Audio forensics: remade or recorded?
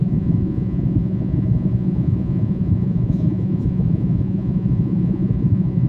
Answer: remade